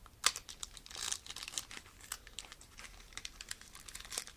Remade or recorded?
recorded